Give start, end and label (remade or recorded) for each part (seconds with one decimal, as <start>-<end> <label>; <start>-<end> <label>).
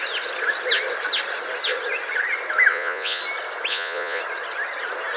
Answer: 0.0-2.7 recorded; 2.7-3.2 remade; 3.2-3.7 recorded; 3.7-4.2 remade; 4.2-5.2 recorded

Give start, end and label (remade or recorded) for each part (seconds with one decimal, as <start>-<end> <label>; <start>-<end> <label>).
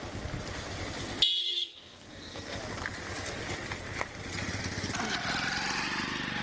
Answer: 0.0-1.4 recorded; 1.4-2.6 remade; 2.6-6.4 recorded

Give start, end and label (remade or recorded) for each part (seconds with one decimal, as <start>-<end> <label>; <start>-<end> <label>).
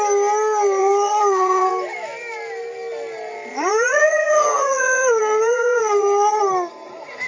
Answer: 0.0-0.8 recorded; 0.8-1.7 remade; 1.7-3.5 recorded; 3.5-6.4 remade; 6.4-7.3 recorded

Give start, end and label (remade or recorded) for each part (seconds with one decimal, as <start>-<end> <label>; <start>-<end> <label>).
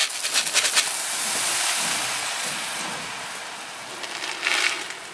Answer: 0.0-2.2 recorded; 2.2-2.8 remade; 2.8-5.1 recorded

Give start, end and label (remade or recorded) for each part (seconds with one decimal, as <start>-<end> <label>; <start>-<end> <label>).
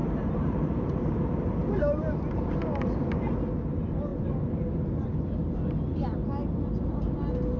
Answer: 0.0-3.3 remade; 3.3-7.6 recorded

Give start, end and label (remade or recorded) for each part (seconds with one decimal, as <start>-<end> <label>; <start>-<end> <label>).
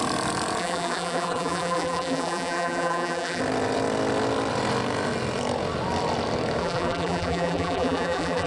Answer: 0.0-0.6 recorded; 0.6-3.4 remade; 3.4-6.6 recorded; 6.6-8.5 remade